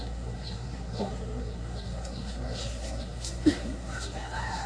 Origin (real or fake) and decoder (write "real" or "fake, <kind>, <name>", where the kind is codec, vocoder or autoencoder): fake, codec, SNAC